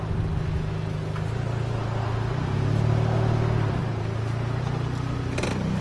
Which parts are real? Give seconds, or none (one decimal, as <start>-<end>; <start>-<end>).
0.0-5.8